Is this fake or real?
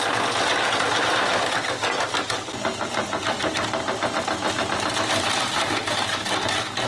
real